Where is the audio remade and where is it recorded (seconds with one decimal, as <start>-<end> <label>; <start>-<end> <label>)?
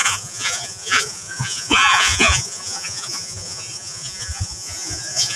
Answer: 0.0-5.4 remade